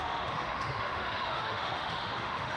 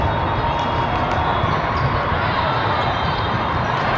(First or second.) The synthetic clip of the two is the first